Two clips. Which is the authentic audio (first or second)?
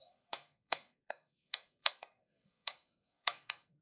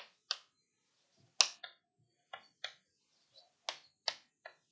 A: second